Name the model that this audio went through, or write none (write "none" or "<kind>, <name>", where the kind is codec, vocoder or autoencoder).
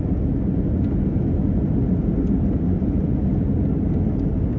none